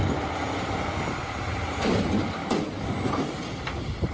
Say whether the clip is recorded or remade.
remade